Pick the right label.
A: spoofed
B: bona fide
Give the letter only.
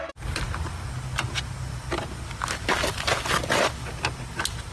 B